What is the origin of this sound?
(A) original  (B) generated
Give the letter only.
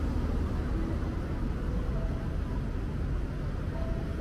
A